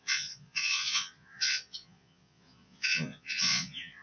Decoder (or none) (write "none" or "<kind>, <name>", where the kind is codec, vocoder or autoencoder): vocoder, Vocos